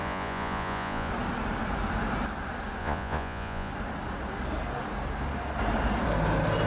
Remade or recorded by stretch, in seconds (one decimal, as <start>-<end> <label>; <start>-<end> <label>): 0.0-1.1 remade; 1.1-2.8 recorded; 2.8-3.7 remade; 3.7-6.7 recorded